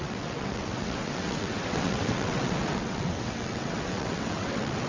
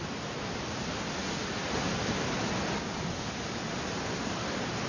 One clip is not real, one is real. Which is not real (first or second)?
first